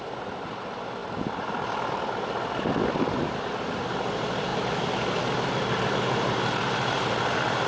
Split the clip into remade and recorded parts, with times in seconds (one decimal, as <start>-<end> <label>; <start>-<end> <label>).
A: 0.0-7.7 recorded